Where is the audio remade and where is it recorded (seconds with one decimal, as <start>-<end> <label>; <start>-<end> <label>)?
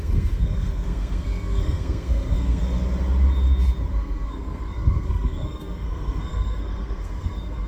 0.0-2.6 remade; 2.6-3.9 recorded; 3.9-7.7 remade